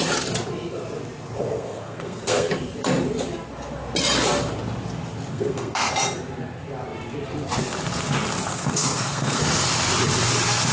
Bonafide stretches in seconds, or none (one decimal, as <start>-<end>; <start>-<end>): 0.0-1.4; 2.5-5.3; 5.9-8.5; 9.4-10.7